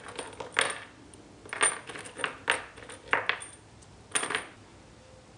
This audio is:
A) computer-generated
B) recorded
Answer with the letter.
B